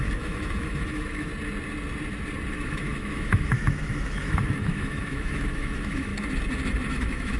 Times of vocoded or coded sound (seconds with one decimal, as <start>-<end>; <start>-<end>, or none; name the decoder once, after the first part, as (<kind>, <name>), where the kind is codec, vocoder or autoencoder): 0.0-1.3 (autoencoder, DAC-VAE); 2.5-6.1; 6.9-7.4